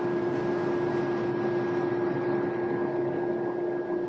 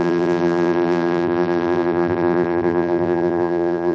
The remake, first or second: second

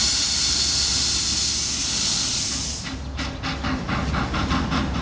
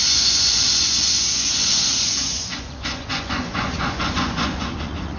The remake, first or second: second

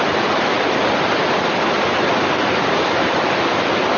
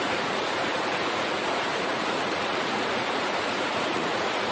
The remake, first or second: second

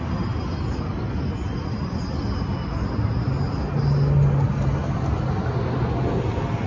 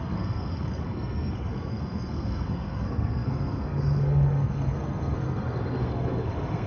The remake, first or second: second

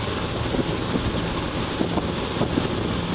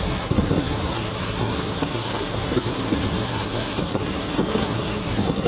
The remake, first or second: second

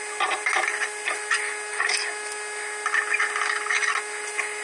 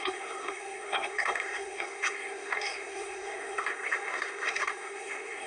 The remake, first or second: second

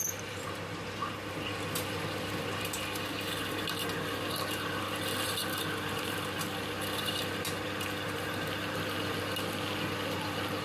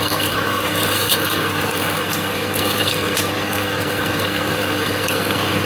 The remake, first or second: second